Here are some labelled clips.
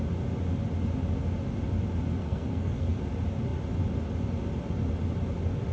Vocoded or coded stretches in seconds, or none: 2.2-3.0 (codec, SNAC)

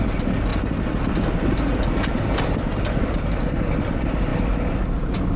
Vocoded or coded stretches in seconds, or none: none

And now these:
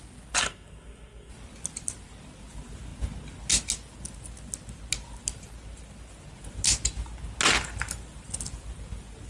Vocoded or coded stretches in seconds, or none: 0.4-1.3 (codec, SNAC)